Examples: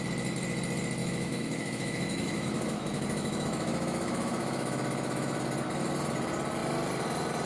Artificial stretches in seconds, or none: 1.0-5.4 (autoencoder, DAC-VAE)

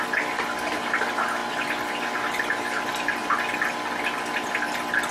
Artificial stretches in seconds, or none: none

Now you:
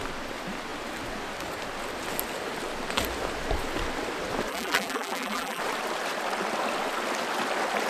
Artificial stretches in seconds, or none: 4.5-5.6 (vocoder, BigVGAN v2)